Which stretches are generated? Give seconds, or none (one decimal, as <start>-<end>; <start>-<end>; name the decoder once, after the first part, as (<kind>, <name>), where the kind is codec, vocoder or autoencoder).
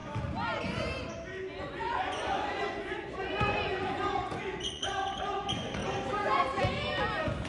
1.6-5.8 (vocoder, Vocos)